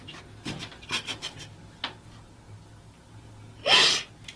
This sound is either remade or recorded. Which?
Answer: recorded